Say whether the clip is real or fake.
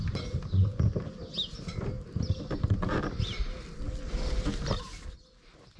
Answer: real